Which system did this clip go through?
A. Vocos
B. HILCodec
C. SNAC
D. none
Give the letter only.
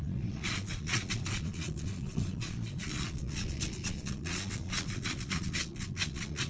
A